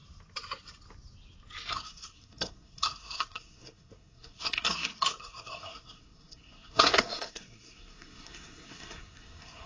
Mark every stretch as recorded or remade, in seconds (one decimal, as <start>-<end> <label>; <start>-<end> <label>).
0.0-1.7 recorded; 1.7-9.7 remade